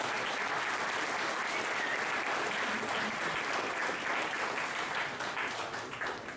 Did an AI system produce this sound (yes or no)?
no